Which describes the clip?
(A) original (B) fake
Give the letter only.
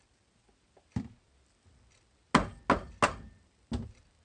A